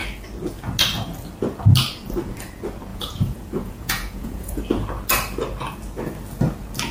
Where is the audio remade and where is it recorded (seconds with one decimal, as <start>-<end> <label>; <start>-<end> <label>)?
0.0-2.9 recorded; 2.9-4.6 remade; 4.6-6.9 recorded